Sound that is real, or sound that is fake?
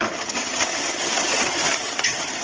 fake